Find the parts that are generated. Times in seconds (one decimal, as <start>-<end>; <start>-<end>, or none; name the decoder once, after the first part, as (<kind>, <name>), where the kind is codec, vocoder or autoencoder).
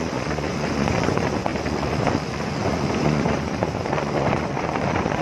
0.0-5.2 (vocoder, Vocos)